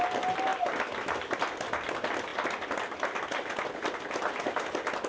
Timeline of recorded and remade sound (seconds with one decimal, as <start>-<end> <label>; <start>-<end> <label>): 0.0-5.1 recorded